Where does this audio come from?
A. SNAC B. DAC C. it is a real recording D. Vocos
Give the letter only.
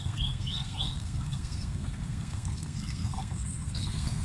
A